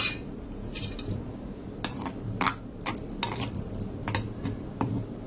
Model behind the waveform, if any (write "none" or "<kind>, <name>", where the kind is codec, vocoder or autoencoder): none